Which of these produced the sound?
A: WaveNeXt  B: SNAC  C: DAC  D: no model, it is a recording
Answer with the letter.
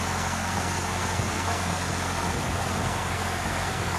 B